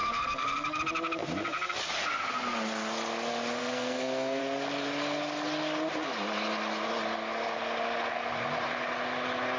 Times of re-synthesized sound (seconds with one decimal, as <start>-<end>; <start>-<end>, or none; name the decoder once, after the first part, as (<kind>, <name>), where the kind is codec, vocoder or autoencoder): 0.0-0.8 (codec, SNAC); 3.6-4.4